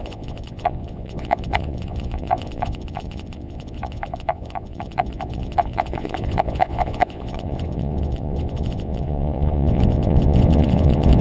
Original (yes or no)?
no